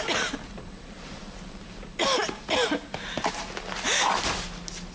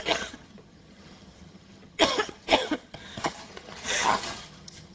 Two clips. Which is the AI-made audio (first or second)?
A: second